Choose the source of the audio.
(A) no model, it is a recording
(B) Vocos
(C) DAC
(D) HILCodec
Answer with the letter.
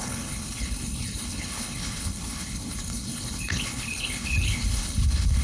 D